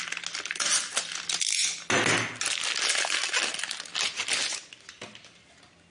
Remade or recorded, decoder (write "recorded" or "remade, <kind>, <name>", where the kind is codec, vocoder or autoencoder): recorded